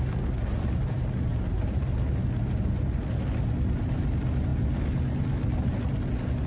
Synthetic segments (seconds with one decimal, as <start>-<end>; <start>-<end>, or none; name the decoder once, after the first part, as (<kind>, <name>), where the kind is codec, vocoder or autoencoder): none